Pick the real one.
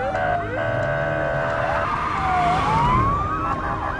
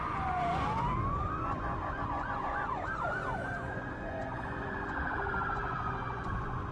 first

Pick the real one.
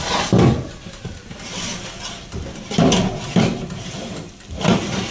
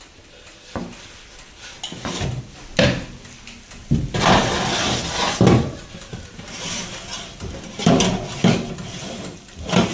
second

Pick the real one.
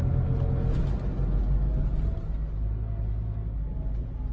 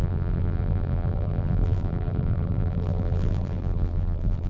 first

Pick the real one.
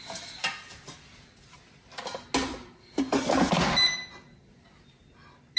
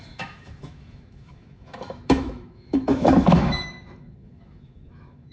first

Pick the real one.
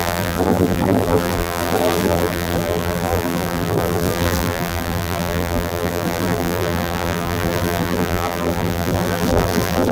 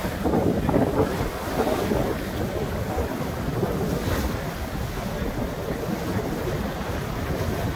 second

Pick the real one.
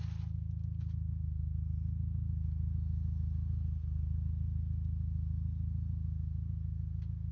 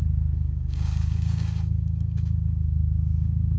first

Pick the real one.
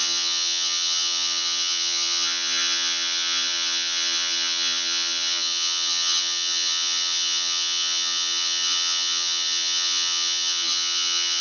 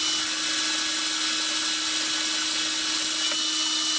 second